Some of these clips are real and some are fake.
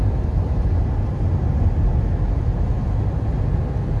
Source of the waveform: real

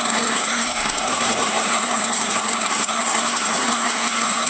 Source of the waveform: fake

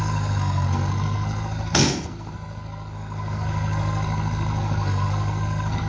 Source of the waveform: fake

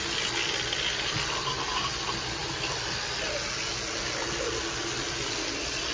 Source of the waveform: real